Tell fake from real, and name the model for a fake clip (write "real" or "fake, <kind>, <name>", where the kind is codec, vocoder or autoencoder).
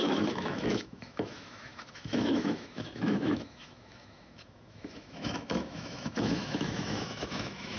fake, autoencoder, DAC-VAE